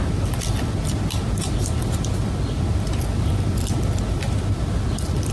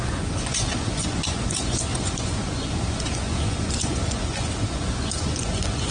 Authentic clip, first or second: first